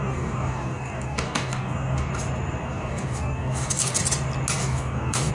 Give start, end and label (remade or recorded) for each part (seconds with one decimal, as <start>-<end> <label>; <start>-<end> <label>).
0.0-2.1 remade; 2.1-2.6 recorded; 2.6-4.0 remade; 4.0-4.6 recorded; 4.6-5.3 remade